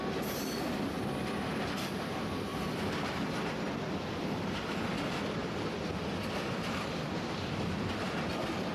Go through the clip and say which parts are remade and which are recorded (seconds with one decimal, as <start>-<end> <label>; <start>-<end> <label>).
0.0-2.5 recorded; 2.5-3.3 remade; 3.3-5.4 recorded; 5.4-8.7 remade